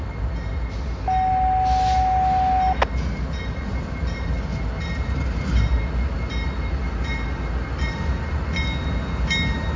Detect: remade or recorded recorded